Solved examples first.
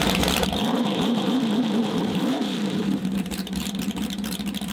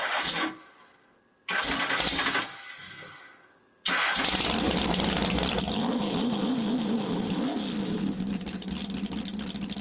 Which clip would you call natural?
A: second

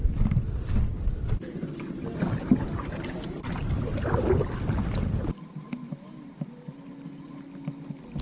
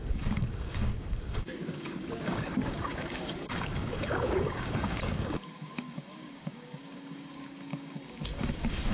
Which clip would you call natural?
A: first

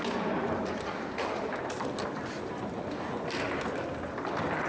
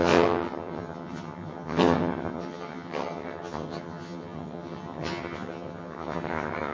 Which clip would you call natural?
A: first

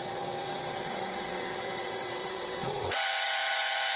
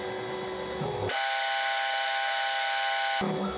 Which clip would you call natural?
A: second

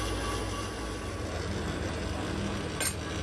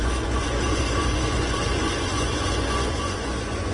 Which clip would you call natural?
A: first